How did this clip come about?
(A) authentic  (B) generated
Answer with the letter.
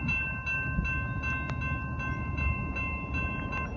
A